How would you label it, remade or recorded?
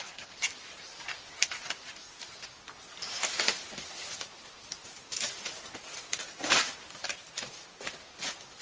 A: recorded